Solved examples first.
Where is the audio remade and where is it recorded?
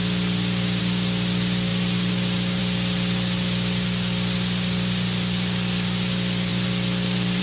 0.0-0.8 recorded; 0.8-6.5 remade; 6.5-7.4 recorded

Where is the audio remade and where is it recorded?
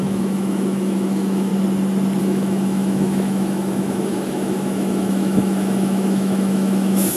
0.0-1.5 remade; 1.5-2.2 recorded; 2.2-7.2 remade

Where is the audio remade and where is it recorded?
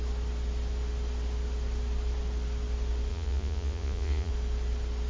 0.0-3.1 recorded; 3.1-4.3 remade; 4.3-5.1 recorded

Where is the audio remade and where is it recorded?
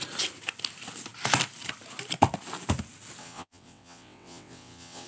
0.0-3.2 recorded; 3.2-5.1 remade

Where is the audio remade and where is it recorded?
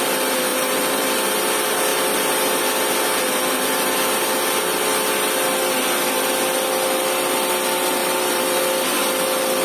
0.0-0.5 recorded; 0.5-1.0 remade; 1.0-8.0 recorded; 8.0-8.6 remade; 8.6-9.6 recorded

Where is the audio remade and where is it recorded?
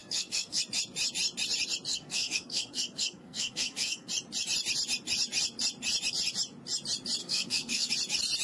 0.0-0.6 remade; 0.6-1.9 recorded; 1.9-4.1 remade; 4.1-7.2 recorded; 7.2-7.9 remade; 7.9-8.4 recorded